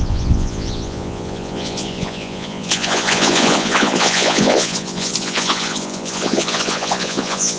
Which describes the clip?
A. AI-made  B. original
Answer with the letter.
A